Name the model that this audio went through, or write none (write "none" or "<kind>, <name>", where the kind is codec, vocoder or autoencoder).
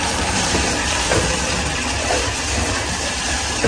none